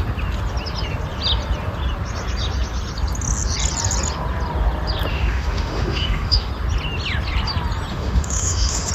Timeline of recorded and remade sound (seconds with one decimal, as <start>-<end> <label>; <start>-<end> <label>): 0.0-5.1 recorded; 5.1-6.5 remade; 6.5-7.9 recorded; 7.9-8.9 remade